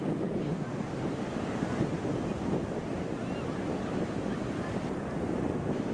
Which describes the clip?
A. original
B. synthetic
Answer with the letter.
A